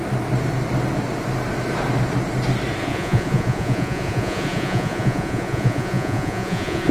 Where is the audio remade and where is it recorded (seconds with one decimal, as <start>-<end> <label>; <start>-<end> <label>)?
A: 0.0-2.8 recorded; 2.8-6.9 remade